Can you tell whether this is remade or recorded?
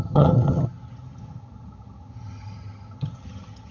remade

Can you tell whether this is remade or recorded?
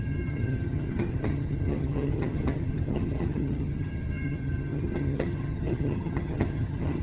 remade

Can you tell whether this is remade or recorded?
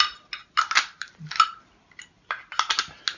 recorded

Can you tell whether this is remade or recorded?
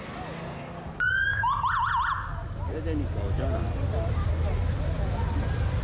recorded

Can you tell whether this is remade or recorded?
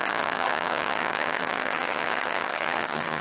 remade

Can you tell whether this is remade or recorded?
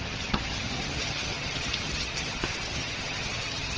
remade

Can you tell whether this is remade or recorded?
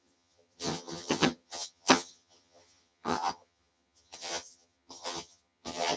remade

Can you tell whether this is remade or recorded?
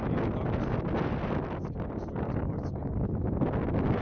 recorded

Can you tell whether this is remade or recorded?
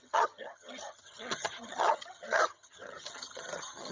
remade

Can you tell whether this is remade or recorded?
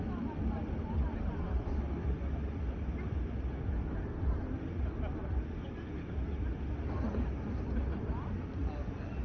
recorded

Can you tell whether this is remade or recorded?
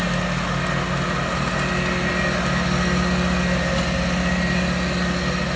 recorded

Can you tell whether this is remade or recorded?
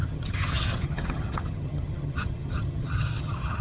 remade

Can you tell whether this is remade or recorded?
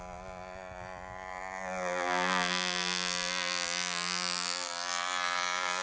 recorded